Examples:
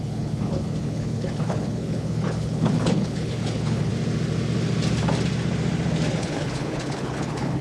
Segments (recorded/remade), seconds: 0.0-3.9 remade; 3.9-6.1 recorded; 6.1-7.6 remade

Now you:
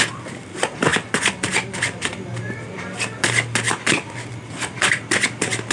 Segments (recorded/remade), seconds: 0.0-5.7 recorded

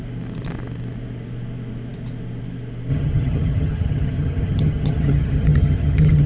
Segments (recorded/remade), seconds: 0.0-2.9 recorded; 2.9-6.3 remade

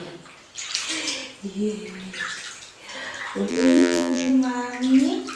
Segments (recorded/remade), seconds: 0.0-3.5 recorded; 3.5-4.3 remade; 4.3-5.4 recorded

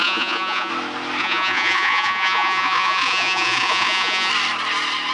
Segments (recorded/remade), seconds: 0.0-0.7 remade; 0.7-1.2 recorded; 1.2-4.3 remade; 4.3-5.1 recorded

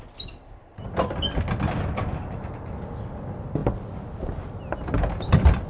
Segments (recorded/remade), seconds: 0.0-5.7 recorded

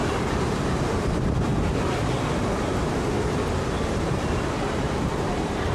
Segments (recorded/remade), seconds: 0.0-1.5 remade; 1.5-3.8 recorded; 3.8-5.7 remade

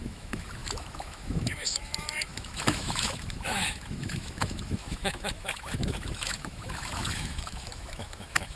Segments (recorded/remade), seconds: 0.0-8.6 remade